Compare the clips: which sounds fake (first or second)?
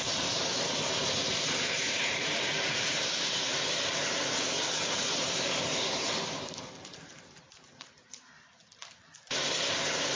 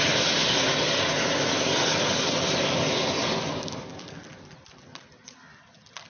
first